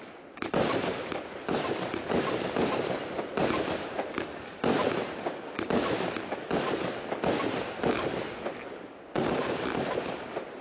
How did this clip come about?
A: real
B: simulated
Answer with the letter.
A